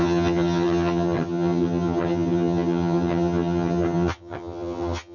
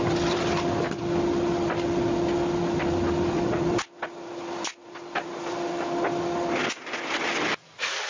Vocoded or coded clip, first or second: first